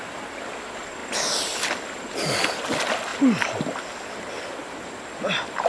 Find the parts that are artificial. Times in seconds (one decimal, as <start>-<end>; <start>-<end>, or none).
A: none